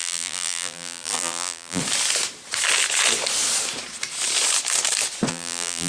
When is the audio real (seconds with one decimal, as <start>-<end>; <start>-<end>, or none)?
1.8-5.3